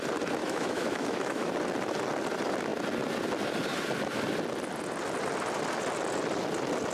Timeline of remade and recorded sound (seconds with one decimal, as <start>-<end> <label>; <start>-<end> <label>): 0.0-0.4 recorded; 0.4-1.5 remade; 1.5-6.9 recorded